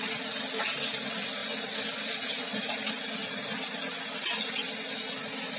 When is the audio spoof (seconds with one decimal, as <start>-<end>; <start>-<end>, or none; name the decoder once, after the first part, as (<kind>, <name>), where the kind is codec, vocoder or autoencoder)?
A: none